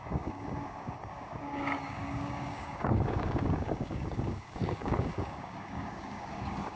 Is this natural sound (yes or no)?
no